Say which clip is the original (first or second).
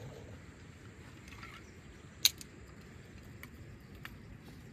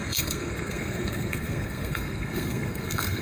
first